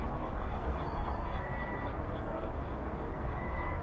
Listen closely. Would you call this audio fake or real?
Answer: fake